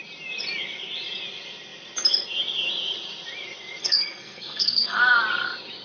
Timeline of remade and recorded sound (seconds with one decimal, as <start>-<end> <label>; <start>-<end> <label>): 0.0-3.8 recorded; 3.8-5.0 remade; 5.0-5.8 recorded